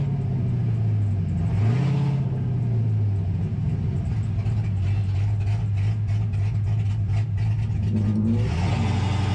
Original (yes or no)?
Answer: yes